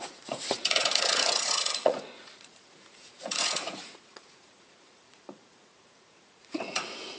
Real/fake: fake